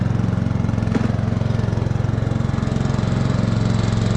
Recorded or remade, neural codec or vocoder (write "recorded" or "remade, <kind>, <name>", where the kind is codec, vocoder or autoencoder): recorded